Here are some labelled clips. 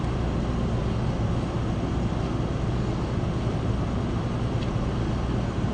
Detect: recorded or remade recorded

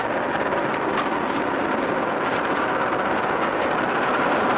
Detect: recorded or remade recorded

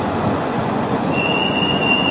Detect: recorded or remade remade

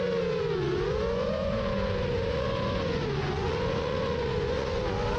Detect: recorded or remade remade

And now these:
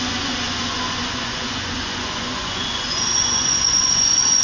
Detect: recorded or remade remade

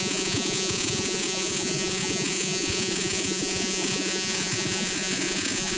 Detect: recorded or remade remade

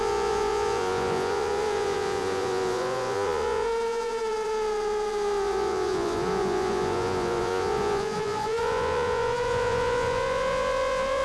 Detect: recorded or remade remade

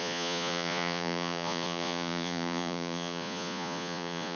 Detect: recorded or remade remade